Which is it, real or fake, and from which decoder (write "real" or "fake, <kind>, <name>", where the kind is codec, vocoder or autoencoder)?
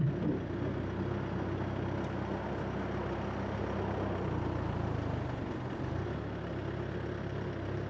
real